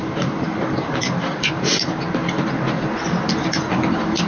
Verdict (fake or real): real